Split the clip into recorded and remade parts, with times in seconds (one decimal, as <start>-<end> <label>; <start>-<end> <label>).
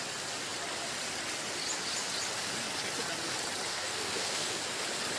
0.0-3.7 recorded; 3.7-4.6 remade; 4.6-5.2 recorded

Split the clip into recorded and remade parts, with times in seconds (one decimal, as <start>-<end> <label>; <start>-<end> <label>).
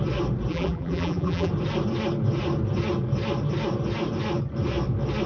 0.0-0.5 recorded; 0.5-1.5 remade; 1.5-5.3 recorded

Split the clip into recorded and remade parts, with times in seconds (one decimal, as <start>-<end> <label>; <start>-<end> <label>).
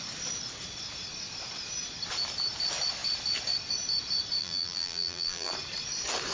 0.0-4.4 recorded; 4.4-5.5 remade; 5.5-6.3 recorded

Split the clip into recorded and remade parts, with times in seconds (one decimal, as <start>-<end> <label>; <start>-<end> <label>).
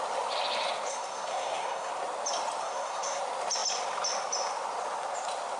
0.0-0.9 recorded; 0.9-1.9 remade; 1.9-2.6 recorded; 2.6-3.2 remade; 3.2-5.6 recorded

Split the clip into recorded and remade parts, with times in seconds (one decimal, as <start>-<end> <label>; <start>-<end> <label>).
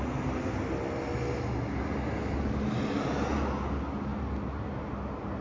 0.0-5.4 recorded